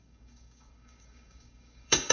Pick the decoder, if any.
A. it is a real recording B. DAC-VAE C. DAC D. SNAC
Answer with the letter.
C